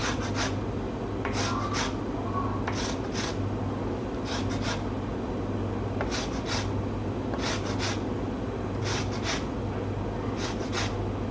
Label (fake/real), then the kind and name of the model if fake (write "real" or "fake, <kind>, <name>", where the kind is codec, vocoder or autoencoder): real